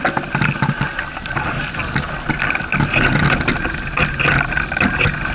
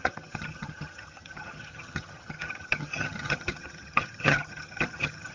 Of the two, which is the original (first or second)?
first